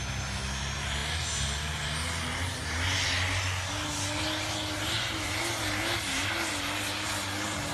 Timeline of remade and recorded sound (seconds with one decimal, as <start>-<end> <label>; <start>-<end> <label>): 0.0-7.7 recorded